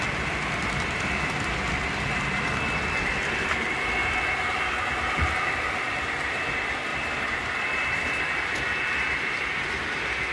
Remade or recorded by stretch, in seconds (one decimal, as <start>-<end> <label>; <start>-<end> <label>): 0.0-6.9 recorded; 6.9-8.0 remade; 8.0-10.3 recorded